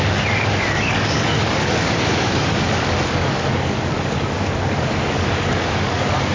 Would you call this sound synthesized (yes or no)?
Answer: yes